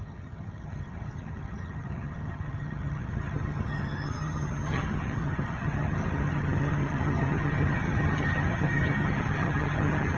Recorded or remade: remade